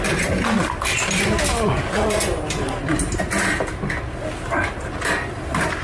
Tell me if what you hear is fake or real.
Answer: real